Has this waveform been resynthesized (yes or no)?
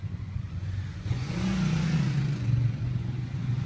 yes